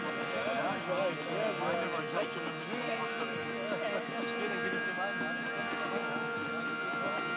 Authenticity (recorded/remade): recorded